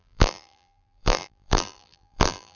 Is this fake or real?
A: fake